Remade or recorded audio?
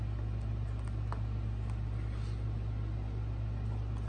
recorded